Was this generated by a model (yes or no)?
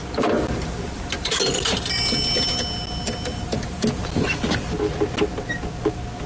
no